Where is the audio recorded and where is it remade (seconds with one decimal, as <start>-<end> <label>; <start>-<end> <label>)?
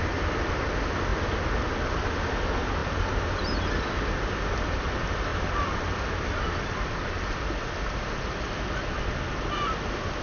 0.0-10.2 recorded